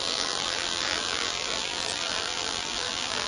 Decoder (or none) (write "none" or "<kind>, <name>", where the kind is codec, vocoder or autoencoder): vocoder, BigVGAN v2